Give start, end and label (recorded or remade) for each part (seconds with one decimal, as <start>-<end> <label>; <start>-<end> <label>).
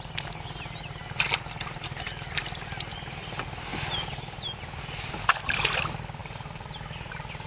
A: 0.0-7.5 recorded